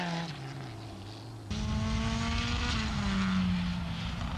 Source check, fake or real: real